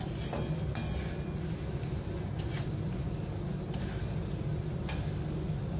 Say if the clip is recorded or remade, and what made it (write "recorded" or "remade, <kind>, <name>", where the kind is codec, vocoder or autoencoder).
recorded